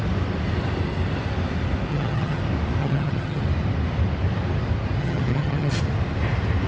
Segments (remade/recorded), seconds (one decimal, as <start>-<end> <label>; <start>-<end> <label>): 0.0-1.9 recorded; 1.9-2.4 remade; 2.4-2.8 recorded; 2.8-3.4 remade; 3.4-5.0 recorded; 5.0-5.8 remade; 5.8-6.7 recorded